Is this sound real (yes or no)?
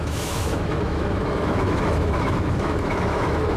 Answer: no